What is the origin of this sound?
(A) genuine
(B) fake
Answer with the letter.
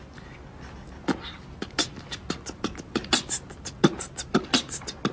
A